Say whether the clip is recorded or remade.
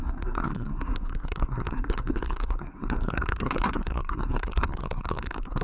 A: remade